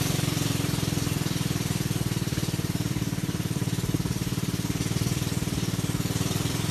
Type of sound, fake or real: fake